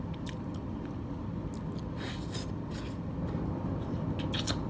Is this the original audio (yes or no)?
yes